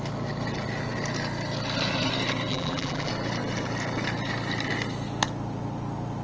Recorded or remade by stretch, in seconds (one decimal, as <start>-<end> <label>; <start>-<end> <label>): 0.0-2.5 recorded; 2.5-3.1 remade; 3.1-6.2 recorded